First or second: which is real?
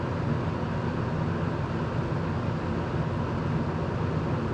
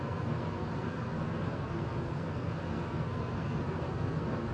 first